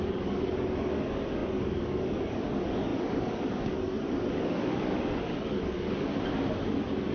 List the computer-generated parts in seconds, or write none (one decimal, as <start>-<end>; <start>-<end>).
0.0-6.1